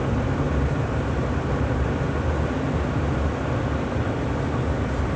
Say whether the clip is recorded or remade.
recorded